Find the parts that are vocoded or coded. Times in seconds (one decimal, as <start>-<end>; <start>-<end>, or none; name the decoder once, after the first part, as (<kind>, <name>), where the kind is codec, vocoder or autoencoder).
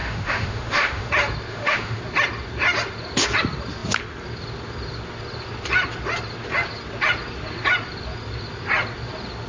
0.0-1.1 (autoencoder, DAC-VAE); 1.5-2.0